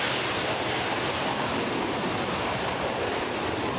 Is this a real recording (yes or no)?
yes